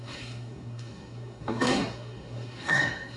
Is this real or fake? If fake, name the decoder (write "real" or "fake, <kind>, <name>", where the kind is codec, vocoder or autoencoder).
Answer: fake, codec, SNAC